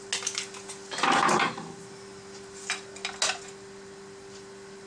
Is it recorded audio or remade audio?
recorded